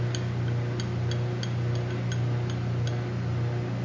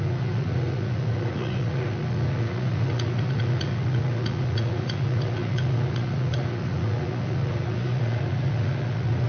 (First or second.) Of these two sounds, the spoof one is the second